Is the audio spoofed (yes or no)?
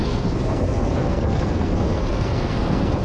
yes